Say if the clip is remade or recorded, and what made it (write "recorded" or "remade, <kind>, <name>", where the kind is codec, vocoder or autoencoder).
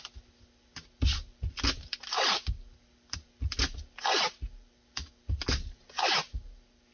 recorded